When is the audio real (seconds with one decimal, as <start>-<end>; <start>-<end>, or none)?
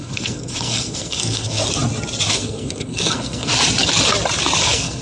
1.6-2.3; 3.5-4.6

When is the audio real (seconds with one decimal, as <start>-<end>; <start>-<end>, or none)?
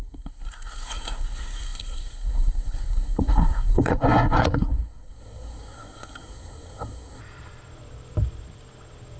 7.2-9.2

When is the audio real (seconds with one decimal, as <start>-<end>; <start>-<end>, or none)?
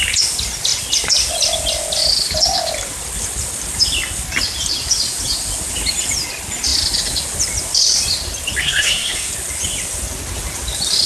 0.0-8.6; 9.3-11.1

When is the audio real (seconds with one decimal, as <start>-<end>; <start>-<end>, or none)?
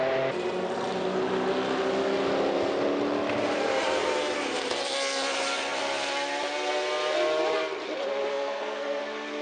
0.0-8.3; 9.0-9.4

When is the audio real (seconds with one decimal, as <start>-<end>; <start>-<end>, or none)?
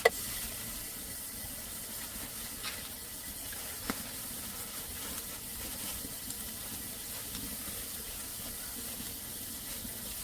0.0-10.2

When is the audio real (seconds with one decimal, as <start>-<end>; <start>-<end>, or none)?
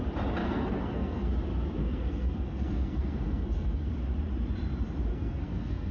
0.0-0.4; 1.3-1.8; 3.9-5.1